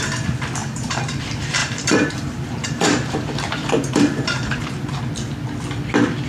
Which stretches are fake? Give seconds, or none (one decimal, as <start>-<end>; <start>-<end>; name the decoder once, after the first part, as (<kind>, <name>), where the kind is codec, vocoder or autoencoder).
0.6-1.2 (vocoder, BigVGAN v2); 1.6-5.0